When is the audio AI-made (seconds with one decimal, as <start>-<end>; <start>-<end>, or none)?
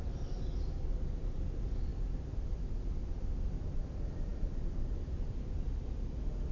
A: 1.9-3.2